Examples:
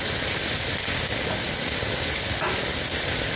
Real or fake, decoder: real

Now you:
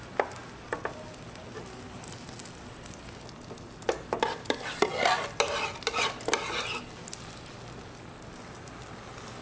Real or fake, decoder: real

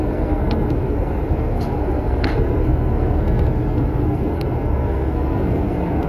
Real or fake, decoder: fake, codec, SNAC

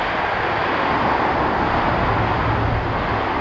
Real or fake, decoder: real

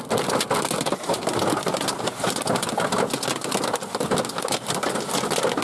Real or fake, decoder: real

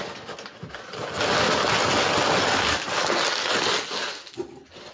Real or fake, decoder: real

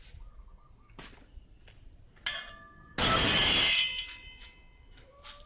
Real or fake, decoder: real